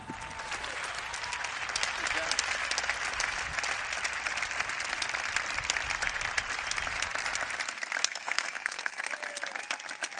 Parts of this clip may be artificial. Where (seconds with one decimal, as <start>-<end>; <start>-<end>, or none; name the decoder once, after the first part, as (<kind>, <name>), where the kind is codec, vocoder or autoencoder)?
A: 8.0-9.1 (codec, SNAC)